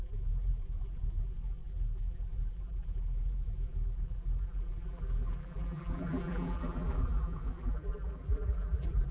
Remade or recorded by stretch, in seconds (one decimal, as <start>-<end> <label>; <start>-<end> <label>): 0.0-9.1 remade